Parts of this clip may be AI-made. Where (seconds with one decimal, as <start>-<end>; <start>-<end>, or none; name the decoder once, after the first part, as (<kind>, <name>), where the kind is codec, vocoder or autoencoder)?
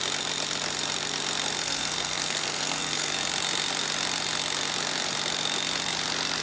1.6-3.1 (codec, SNAC)